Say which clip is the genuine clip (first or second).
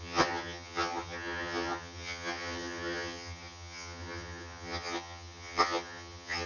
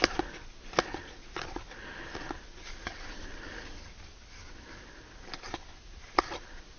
second